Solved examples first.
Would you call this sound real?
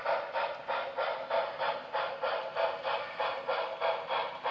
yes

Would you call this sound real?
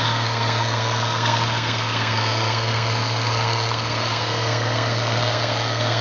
no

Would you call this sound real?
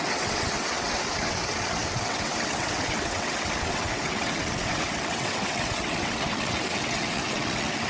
no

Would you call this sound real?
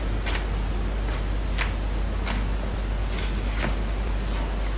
yes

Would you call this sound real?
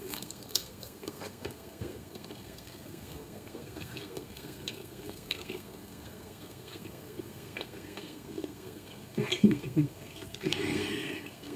no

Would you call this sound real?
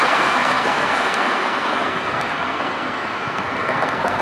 no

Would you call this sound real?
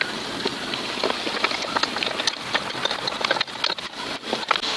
yes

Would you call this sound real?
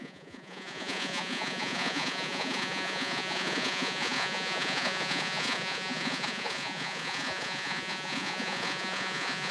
no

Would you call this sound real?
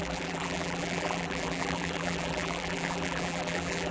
no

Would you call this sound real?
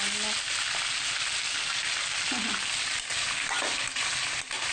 yes